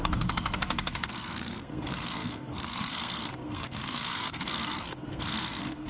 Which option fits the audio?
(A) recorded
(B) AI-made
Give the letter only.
B